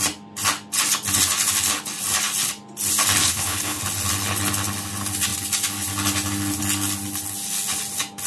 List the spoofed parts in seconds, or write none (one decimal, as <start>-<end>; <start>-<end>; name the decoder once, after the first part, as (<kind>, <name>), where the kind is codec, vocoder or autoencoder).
3.2-3.8 (codec, HILCodec)